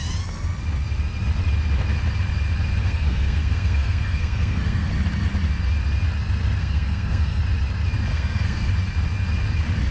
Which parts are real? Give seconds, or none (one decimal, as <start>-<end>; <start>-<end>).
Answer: 0.0-2.8; 4.9-6.6; 7.4-8.1; 8.7-9.9